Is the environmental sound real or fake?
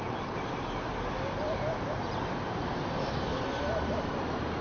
real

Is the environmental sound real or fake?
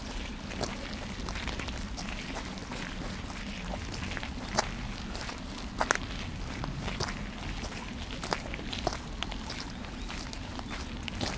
real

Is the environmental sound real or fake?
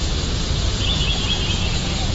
fake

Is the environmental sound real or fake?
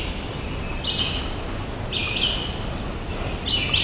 real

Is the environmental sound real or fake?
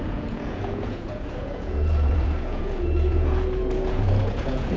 fake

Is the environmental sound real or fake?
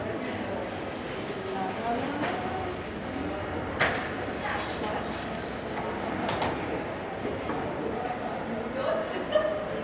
real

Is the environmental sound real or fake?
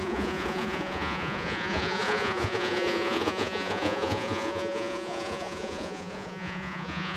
fake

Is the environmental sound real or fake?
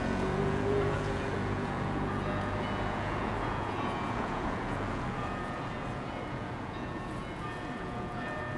fake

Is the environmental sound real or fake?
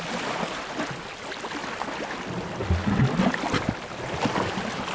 real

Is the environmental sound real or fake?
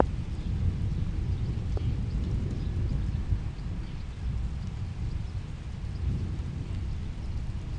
real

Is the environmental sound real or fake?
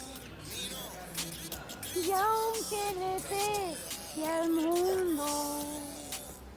real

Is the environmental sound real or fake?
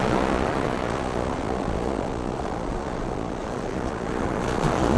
fake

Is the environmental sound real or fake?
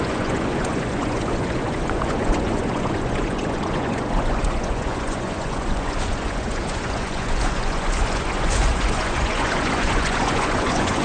fake